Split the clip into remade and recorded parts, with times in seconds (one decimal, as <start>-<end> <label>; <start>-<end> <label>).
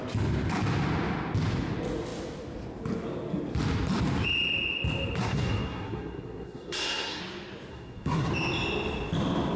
0.0-5.2 recorded; 5.2-7.2 remade; 7.2-7.7 recorded; 7.7-8.3 remade; 8.3-9.6 recorded